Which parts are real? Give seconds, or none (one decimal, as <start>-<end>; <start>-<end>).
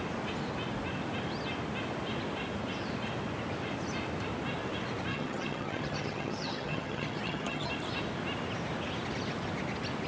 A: 0.0-5.1; 7.7-10.1